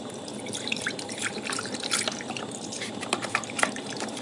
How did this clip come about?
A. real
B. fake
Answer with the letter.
B